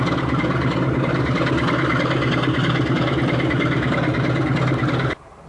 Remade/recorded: recorded